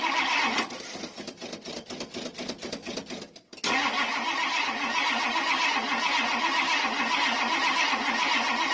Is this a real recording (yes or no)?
yes